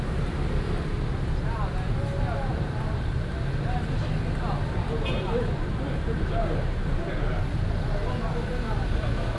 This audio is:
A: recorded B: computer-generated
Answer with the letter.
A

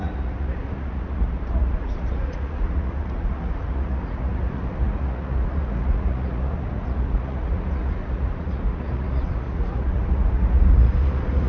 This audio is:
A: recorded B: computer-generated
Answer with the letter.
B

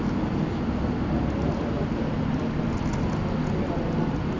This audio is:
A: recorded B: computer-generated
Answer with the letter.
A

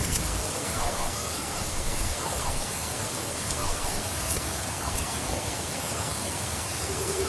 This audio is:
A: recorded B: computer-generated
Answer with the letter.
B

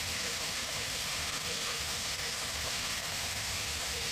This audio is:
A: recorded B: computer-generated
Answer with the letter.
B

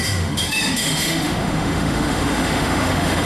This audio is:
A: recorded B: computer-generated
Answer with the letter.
B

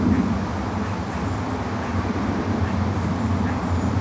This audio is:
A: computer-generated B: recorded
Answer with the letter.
B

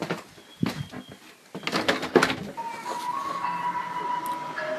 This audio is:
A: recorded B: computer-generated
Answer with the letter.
A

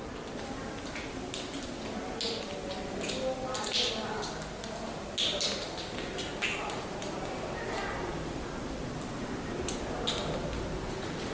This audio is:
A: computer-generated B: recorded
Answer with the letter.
B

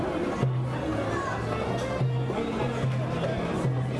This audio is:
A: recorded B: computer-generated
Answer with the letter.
A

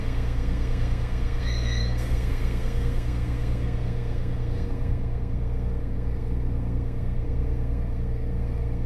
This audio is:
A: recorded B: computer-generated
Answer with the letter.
B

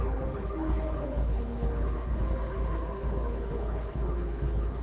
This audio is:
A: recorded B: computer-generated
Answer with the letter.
B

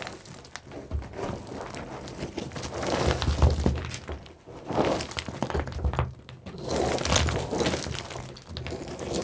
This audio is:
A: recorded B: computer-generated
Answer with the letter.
A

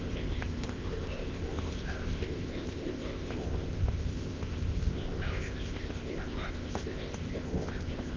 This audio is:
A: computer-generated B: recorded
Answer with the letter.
A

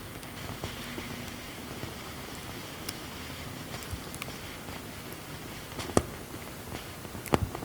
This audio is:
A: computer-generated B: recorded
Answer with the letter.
B